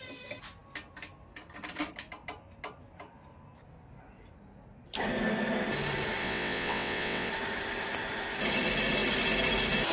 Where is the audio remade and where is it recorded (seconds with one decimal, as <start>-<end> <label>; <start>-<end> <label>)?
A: 0.0-6.2 recorded; 6.2-7.3 remade; 7.3-9.9 recorded